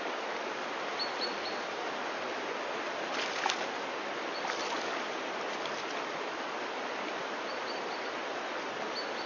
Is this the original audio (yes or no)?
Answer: yes